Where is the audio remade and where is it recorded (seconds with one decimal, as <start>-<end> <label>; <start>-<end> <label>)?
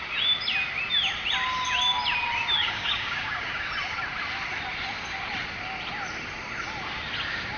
0.0-2.6 recorded; 2.6-3.7 remade; 3.7-7.6 recorded